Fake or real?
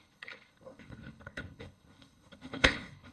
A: fake